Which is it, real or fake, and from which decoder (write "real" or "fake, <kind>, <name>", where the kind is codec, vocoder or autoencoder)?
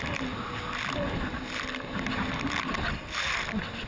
real